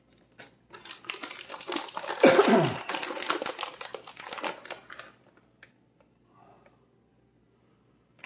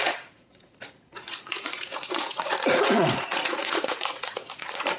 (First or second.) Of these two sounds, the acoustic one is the first